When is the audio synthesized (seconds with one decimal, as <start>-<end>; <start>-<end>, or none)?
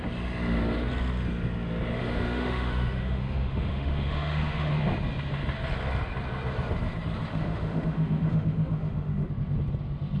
2.0-4.7; 7.3-9.3